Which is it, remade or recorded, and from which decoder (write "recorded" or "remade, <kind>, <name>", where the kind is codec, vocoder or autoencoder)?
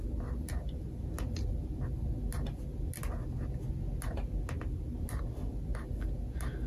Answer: recorded